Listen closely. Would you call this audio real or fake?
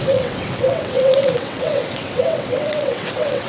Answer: fake